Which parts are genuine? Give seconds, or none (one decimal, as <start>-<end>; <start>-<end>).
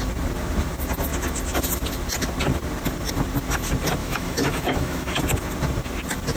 0.0-4.0; 5.2-6.4